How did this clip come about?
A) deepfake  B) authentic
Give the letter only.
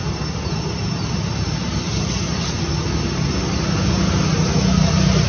B